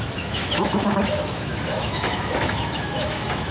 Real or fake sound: fake